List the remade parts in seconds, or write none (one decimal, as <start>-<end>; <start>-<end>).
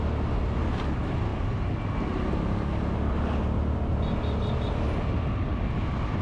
none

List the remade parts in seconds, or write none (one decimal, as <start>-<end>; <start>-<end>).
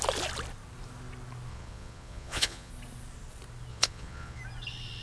1.5-2.7; 3.7-4.4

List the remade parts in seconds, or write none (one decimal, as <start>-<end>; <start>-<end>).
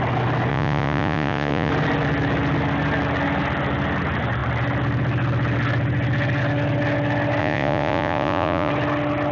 0.5-1.7; 7.4-8.7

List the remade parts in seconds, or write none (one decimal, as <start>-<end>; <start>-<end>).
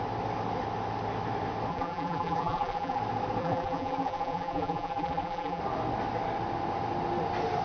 1.7-3.0; 3.4-5.6